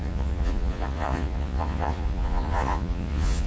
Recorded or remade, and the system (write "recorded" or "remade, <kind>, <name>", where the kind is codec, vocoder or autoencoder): remade, vocoder, Vocos